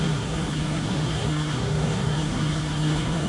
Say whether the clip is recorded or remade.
remade